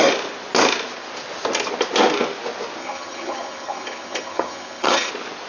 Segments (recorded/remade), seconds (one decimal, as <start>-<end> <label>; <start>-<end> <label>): 0.0-2.8 recorded; 2.8-5.1 remade; 5.1-5.5 recorded